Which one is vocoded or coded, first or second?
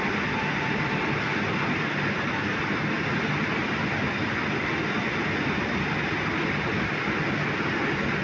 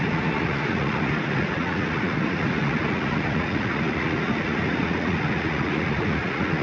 second